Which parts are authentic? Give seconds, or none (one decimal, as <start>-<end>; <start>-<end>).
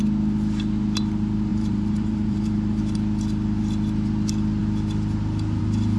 0.0-1.5; 2.8-6.0